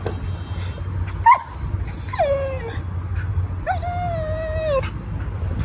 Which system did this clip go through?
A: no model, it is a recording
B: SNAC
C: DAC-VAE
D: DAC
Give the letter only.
A